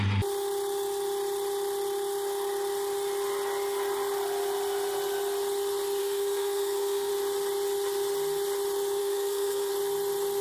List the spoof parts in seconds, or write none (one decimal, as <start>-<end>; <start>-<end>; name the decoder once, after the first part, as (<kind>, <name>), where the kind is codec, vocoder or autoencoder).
6.0-7.1 (codec, SNAC); 9.0-9.7